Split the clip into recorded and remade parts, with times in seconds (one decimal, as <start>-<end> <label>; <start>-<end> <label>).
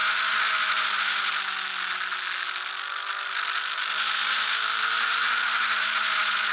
0.0-6.5 recorded